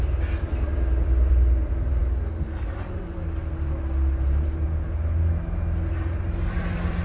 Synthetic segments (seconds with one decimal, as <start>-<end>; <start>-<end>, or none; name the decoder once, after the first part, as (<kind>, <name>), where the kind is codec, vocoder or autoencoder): 0.0-2.0 (vocoder, BigVGAN v2); 6.2-7.0